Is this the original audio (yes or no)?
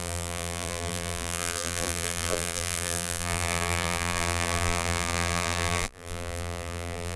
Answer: no